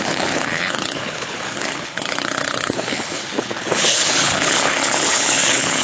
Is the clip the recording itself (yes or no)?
no